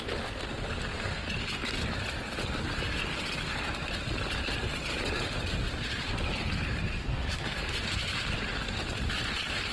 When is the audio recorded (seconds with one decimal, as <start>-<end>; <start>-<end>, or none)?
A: 0.0-7.0; 7.8-9.7